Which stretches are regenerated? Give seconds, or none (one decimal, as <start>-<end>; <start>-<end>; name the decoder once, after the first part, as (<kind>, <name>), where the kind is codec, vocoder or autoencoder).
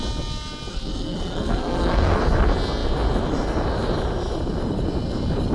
0.7-2.2 (codec, SNAC)